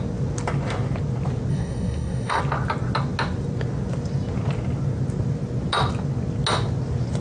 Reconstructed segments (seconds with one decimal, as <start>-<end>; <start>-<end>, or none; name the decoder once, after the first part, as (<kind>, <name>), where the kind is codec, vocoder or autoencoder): 1.5-2.4 (codec, SNAC)